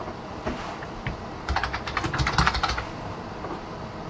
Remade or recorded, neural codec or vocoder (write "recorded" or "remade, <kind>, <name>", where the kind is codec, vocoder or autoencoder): remade, vocoder, BigVGAN v2